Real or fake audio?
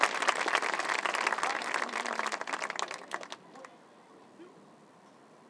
real